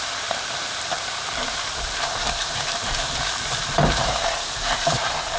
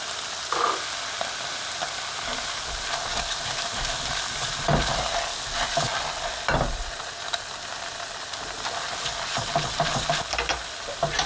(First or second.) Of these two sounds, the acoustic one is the second